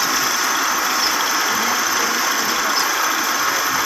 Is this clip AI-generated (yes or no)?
no